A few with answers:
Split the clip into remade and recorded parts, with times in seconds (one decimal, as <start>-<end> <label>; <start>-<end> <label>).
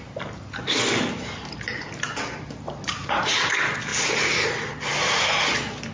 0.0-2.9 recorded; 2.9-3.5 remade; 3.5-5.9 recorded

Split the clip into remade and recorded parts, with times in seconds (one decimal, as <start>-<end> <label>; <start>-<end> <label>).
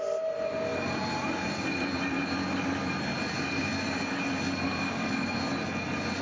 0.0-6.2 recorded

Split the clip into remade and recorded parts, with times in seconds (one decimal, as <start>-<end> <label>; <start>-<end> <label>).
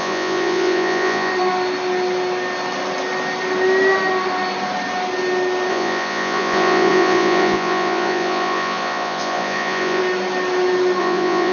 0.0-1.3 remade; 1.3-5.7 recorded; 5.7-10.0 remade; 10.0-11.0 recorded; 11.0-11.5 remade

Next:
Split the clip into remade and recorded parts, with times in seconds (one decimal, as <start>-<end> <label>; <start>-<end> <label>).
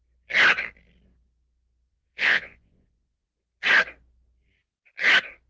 0.0-1.9 recorded; 1.9-3.3 remade; 3.3-5.5 recorded